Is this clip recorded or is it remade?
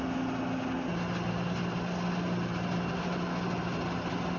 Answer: recorded